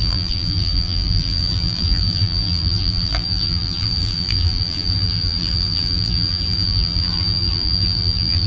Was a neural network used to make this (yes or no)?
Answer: yes